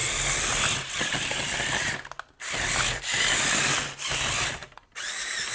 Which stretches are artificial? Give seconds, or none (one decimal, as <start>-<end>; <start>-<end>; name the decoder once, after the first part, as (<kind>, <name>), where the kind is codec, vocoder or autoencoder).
none